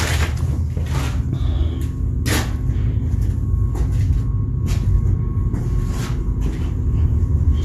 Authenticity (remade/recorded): recorded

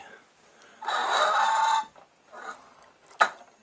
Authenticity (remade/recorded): recorded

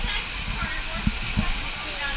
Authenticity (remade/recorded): recorded